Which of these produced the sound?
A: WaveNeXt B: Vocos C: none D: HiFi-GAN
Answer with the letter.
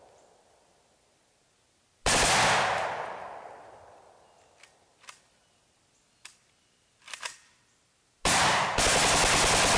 C